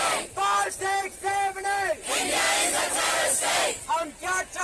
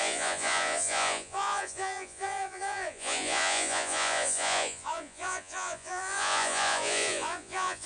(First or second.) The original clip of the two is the first